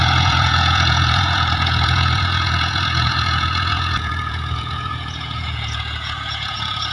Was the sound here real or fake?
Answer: fake